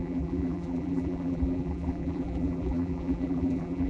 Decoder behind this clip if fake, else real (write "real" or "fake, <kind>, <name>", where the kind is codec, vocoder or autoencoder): fake, vocoder, BigVGAN v2